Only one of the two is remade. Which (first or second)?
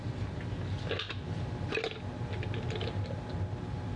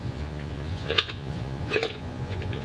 second